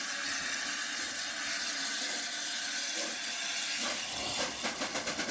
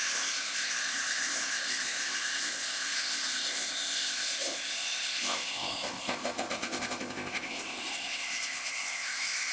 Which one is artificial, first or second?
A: second